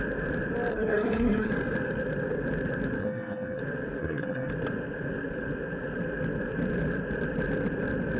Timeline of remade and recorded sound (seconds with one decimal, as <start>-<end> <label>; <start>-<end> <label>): 0.0-0.7 recorded; 0.7-1.5 remade; 1.5-3.0 recorded; 3.0-3.6 remade; 3.6-4.0 recorded; 4.0-4.5 remade; 4.5-8.2 recorded